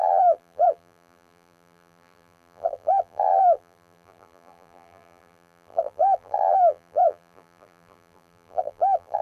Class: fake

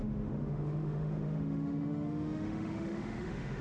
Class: fake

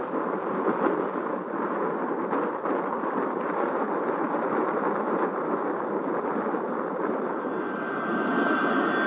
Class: real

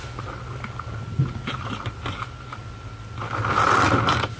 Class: real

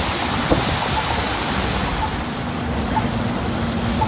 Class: real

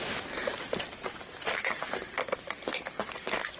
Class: real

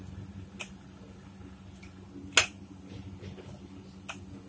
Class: real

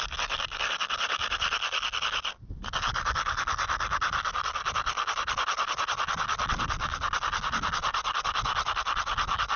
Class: real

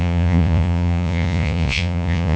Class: fake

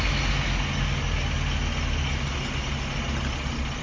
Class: real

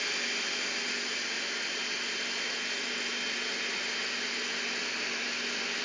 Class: real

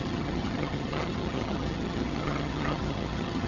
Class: fake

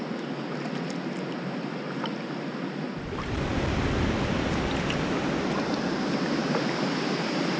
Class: real